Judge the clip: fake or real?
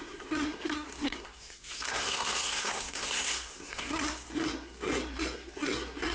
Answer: fake